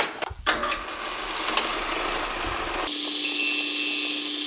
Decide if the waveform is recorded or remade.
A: recorded